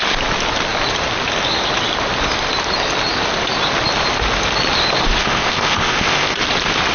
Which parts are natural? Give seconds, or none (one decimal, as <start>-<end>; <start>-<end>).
0.0-5.2; 6.4-6.9

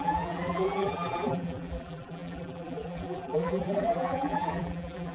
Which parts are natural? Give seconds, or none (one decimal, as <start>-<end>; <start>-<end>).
none